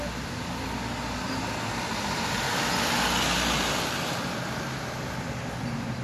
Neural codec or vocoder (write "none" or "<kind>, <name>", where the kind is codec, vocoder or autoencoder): none